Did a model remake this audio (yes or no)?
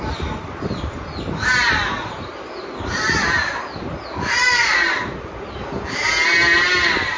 no